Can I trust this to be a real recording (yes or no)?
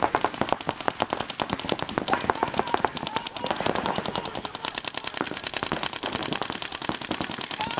yes